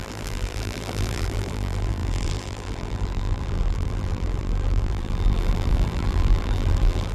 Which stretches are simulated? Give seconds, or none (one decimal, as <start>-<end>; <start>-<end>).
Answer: 0.0-7.1